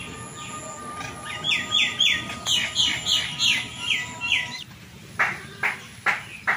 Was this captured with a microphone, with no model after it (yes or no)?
yes